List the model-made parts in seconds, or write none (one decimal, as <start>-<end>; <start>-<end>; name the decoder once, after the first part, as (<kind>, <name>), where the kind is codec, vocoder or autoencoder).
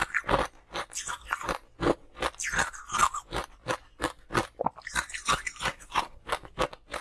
5.7-6.2 (codec, SNAC)